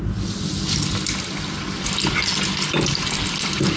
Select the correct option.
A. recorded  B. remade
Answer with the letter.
A